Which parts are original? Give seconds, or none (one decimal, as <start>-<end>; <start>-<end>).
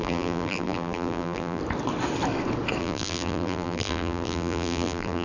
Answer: 1.6-2.8